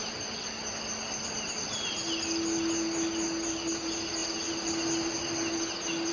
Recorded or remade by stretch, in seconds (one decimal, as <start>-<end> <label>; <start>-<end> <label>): 0.0-6.1 recorded